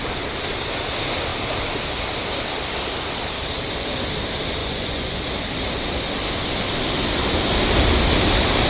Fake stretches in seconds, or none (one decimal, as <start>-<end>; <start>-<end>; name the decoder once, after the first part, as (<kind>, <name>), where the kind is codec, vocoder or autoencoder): 4.6-5.2 (vocoder, Vocos)